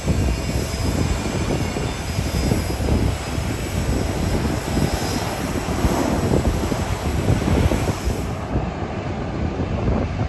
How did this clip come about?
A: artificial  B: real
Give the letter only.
B